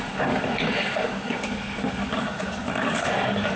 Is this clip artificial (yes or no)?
yes